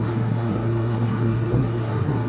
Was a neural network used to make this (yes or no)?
yes